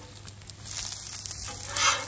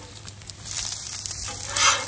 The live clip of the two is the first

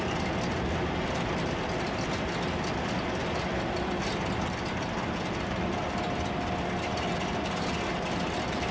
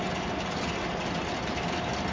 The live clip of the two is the first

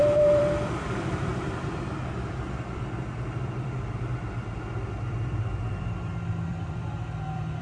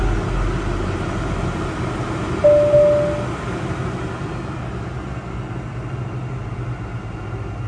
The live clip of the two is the second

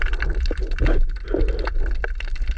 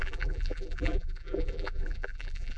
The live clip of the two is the first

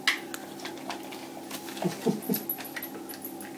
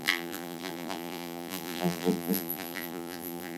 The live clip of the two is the first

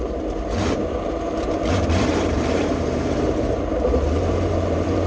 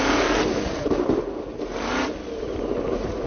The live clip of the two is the second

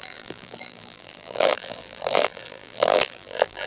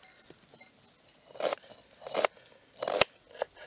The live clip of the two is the second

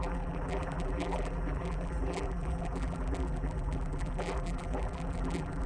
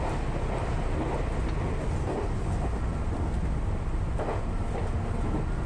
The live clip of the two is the second